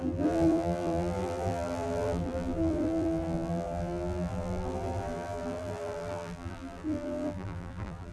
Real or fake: fake